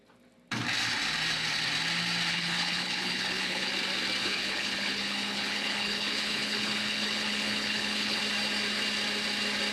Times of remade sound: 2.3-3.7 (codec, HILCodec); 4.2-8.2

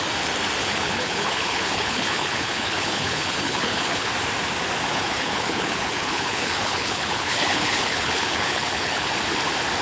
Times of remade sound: 0.6-4.1 (codec, HILCodec); 4.9-9.1

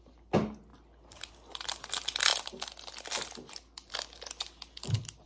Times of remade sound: none